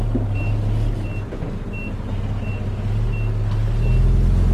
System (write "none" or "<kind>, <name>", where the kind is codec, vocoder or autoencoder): none